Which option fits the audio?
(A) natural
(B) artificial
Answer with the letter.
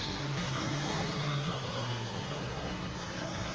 B